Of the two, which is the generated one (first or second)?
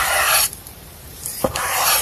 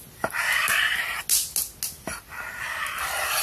first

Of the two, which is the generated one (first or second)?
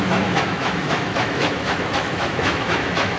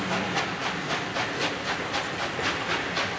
first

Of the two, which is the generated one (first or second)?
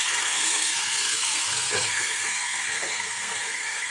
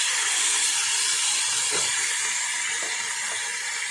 first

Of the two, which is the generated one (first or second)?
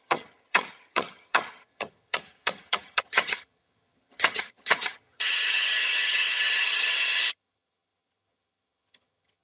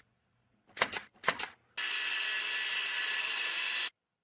first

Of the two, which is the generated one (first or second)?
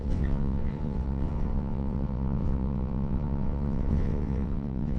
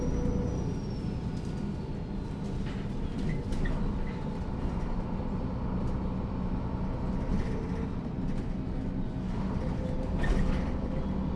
first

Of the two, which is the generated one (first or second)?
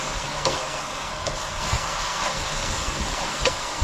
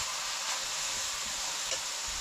first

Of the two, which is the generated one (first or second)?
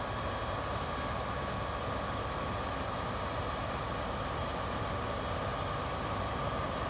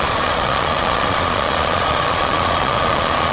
second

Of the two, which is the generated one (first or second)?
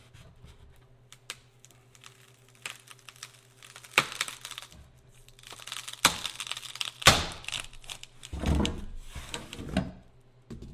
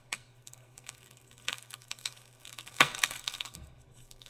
second